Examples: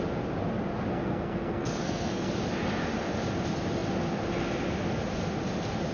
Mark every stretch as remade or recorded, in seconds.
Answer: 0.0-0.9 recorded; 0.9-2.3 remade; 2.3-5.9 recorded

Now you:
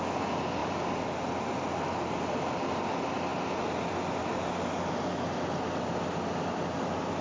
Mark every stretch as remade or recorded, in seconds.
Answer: 0.0-7.2 recorded

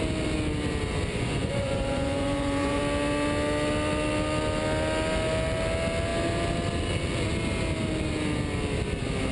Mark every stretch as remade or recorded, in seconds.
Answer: 0.0-1.1 recorded; 1.1-2.8 remade; 2.8-9.3 recorded

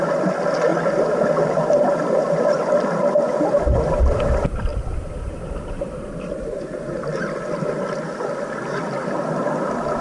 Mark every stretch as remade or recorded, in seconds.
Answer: 0.0-4.7 recorded; 4.7-7.2 remade; 7.2-10.0 recorded

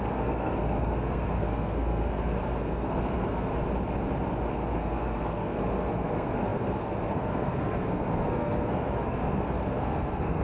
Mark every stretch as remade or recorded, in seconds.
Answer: 0.0-3.5 remade; 3.5-4.7 recorded; 4.7-10.4 remade

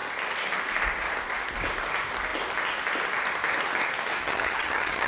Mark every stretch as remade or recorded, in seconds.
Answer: 0.0-4.2 recorded; 4.2-5.1 remade